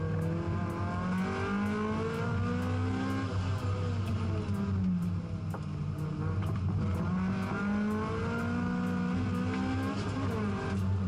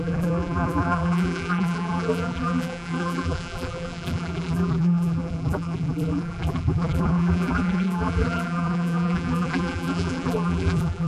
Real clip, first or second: first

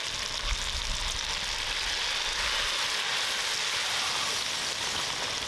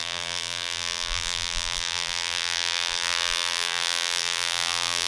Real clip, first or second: first